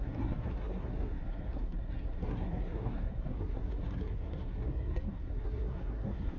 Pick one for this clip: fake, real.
fake